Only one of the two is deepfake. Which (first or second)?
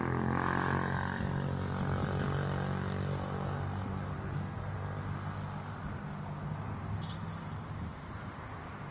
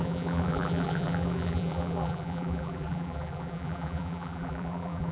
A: second